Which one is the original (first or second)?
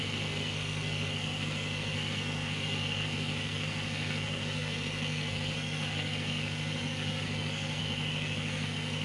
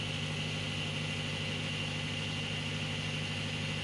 second